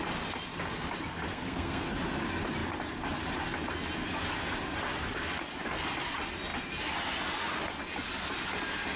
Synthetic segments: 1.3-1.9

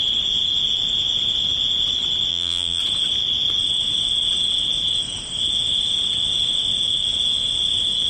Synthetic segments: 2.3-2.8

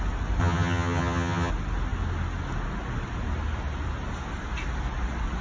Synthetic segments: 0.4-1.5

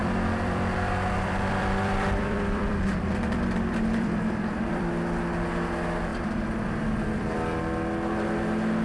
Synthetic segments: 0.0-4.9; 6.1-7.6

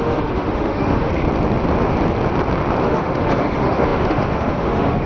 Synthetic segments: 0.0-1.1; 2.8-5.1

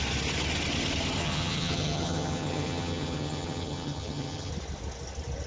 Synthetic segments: 1.2-4.5